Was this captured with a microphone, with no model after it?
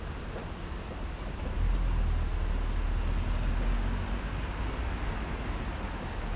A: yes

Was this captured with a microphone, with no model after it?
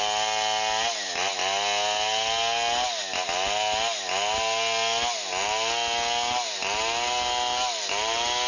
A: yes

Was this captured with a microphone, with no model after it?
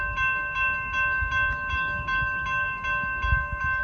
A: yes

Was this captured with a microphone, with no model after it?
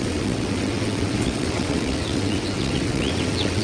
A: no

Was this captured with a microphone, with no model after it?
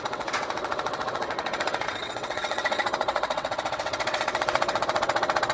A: no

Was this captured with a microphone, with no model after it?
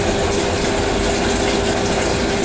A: yes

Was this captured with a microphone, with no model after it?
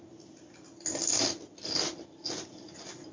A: yes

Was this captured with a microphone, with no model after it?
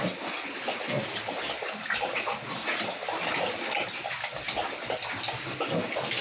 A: yes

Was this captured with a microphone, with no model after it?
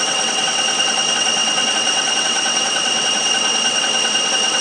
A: no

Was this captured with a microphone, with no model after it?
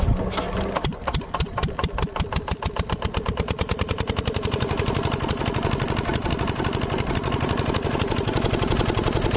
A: yes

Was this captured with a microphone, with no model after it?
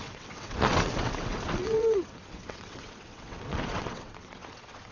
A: no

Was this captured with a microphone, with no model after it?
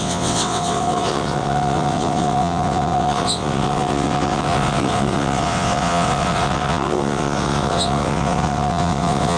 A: no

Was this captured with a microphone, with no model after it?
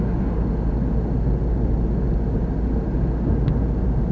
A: yes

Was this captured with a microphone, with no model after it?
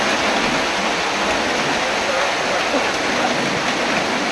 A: yes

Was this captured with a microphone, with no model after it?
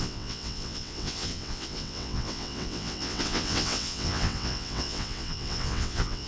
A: no